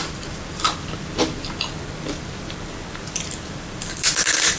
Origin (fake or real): fake